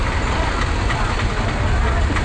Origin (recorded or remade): recorded